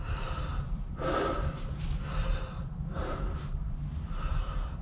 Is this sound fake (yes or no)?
yes